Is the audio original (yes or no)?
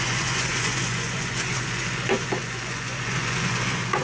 no